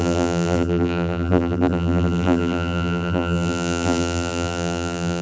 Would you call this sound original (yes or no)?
no